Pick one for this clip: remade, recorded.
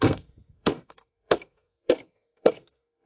remade